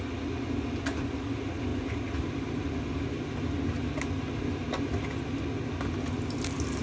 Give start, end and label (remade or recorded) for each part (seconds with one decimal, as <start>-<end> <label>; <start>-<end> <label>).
0.0-6.8 recorded